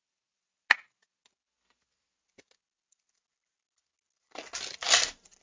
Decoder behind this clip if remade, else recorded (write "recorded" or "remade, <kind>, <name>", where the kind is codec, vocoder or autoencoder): recorded